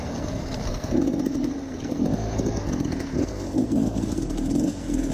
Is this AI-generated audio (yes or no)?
yes